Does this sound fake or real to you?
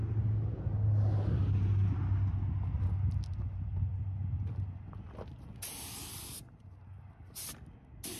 real